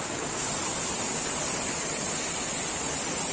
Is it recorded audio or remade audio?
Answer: recorded